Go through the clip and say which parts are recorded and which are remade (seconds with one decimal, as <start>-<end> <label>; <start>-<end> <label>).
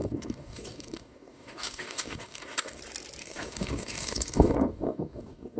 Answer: 0.0-2.8 remade; 2.8-3.2 recorded; 3.2-5.6 remade